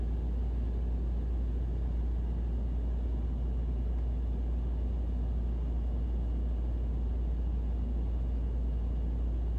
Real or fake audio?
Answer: real